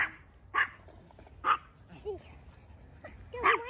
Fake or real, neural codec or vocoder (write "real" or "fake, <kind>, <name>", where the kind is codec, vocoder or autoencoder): real